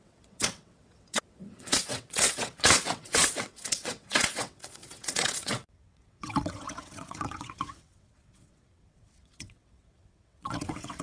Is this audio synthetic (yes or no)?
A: yes